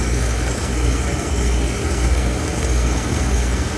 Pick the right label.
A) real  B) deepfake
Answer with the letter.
B